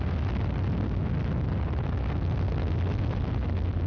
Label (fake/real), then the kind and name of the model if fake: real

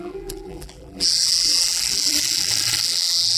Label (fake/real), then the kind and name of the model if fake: fake, vocoder, BigVGAN v2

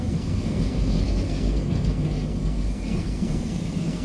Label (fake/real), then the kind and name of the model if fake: fake, codec, SNAC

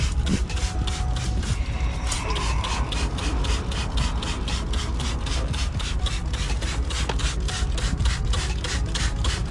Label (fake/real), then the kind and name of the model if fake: real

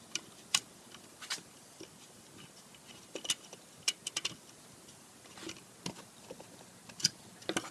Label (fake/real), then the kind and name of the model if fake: real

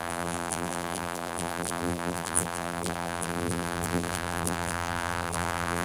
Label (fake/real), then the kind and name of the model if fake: fake, vocoder, BigVGAN v2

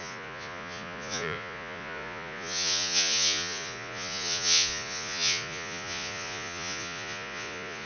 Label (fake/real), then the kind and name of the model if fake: fake, vocoder, Vocos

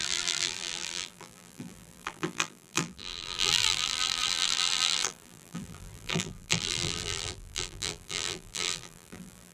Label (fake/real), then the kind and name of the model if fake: fake, vocoder, BigVGAN v2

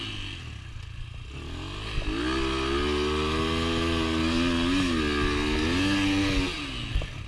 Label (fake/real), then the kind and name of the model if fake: real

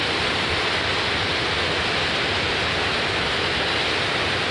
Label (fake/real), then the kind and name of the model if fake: real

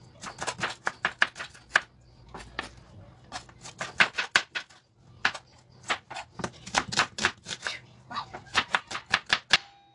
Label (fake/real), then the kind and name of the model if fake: real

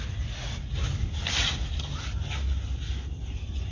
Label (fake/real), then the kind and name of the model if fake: real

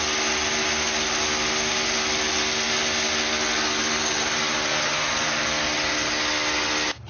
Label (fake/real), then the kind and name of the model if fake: real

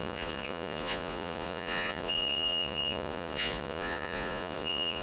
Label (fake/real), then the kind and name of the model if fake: fake, vocoder, Vocos